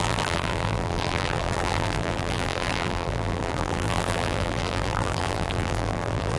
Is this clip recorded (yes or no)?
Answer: no